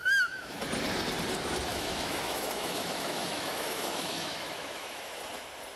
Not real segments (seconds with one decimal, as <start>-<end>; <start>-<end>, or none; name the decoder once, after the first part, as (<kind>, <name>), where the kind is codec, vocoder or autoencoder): 0.0-0.6 (autoencoder, DAC-VAE); 1.7-5.2